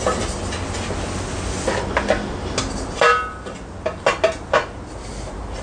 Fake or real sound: real